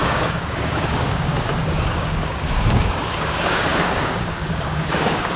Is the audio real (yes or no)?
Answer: no